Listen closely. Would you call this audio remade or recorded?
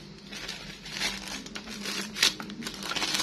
recorded